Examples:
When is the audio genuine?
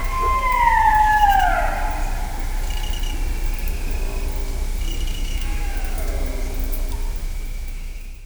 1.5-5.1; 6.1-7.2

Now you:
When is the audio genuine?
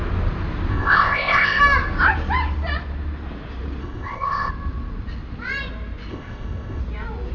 0.0-0.7; 1.6-3.8; 4.5-6.1; 6.8-7.3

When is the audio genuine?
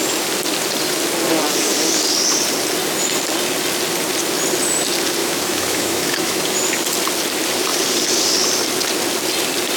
0.0-5.2; 6.5-9.8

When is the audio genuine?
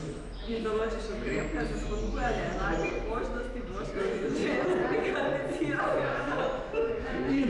4.4-5.8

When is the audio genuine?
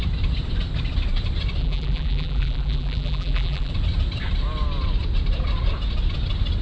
0.0-1.6; 3.7-6.6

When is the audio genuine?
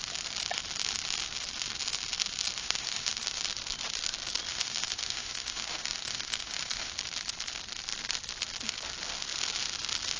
0.0-2.6; 3.4-4.5; 6.9-10.2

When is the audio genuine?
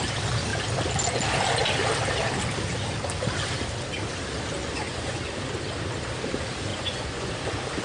0.0-4.6; 5.2-6.7; 7.3-7.8